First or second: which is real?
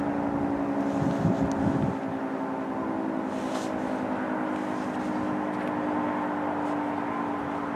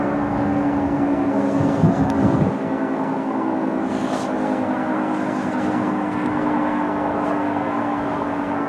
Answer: first